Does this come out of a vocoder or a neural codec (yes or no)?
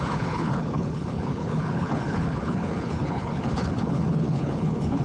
yes